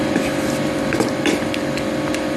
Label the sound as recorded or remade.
recorded